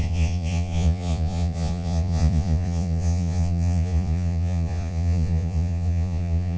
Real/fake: fake